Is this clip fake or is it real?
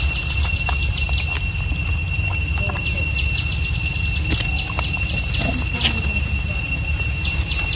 real